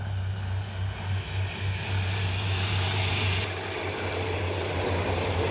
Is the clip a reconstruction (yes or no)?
no